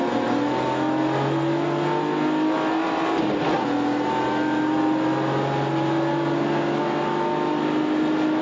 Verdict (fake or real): real